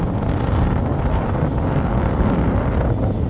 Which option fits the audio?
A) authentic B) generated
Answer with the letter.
A